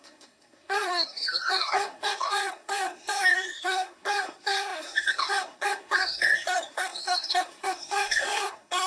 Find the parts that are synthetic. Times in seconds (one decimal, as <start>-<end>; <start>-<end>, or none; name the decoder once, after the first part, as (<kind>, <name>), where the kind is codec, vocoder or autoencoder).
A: 0.0-8.9 (codec, SNAC)

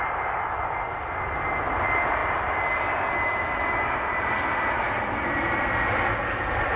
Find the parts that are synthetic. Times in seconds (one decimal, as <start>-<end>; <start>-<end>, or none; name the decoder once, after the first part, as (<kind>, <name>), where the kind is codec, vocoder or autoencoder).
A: none

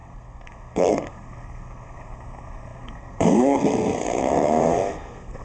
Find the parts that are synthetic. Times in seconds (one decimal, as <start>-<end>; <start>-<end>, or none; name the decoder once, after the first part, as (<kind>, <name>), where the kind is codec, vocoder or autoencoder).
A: 0.0-5.4 (codec, SNAC)

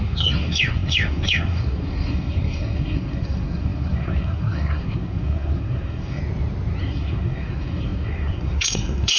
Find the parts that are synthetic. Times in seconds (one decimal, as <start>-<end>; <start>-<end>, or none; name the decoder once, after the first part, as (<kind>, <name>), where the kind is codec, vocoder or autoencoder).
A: 0.0-6.2 (codec, SNAC); 6.8-9.2

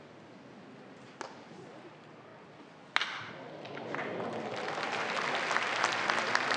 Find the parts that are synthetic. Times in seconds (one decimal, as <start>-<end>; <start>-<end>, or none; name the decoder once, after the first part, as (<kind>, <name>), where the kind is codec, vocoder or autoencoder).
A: none

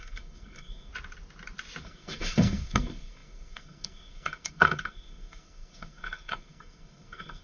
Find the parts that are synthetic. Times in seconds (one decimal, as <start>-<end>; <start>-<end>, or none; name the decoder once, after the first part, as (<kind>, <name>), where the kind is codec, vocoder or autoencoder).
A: 0.0-0.9 (codec, SNAC); 1.8-7.4

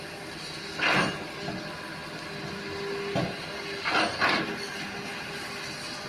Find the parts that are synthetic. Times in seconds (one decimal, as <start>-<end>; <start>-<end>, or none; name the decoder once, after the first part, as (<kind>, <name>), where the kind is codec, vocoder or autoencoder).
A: none